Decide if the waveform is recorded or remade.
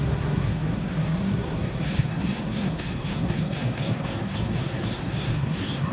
remade